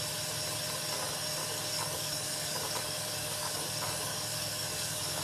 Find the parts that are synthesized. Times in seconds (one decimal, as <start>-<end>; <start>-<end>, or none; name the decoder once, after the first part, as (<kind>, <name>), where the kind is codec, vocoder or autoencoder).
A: 1.4-3.6 (codec, DAC); 4.1-5.2

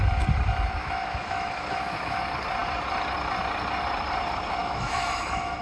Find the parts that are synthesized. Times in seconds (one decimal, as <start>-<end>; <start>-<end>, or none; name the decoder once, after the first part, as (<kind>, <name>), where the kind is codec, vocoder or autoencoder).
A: 0.8-2.2 (autoencoder, DAC-VAE); 4.6-5.6

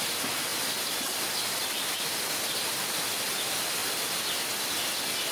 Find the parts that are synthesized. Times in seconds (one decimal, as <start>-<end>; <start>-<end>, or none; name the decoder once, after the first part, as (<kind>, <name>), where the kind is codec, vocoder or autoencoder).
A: none

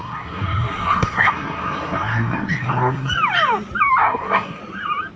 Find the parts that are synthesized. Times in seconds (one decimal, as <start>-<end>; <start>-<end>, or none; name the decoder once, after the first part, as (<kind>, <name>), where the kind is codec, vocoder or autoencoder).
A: 0.0-3.1 (codec, SNAC); 4.0-4.6